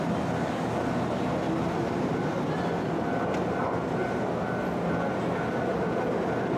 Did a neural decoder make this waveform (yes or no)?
no